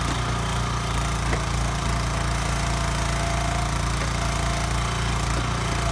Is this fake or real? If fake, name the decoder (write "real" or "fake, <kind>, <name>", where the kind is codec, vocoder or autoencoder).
real